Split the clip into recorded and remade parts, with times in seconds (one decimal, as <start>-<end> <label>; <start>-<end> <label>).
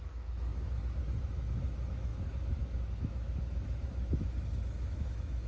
0.0-5.5 remade